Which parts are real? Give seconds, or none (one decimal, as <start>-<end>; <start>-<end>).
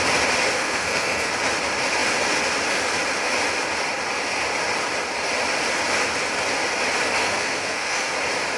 0.0-0.6; 1.3-7.2; 8.1-8.6